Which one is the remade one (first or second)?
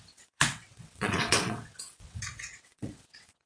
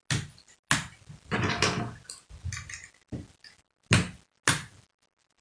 first